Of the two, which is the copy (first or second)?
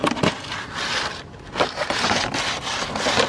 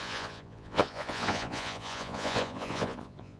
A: second